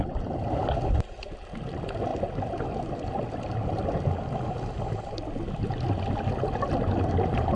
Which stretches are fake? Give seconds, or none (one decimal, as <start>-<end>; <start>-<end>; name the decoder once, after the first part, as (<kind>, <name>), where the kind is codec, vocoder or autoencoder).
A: none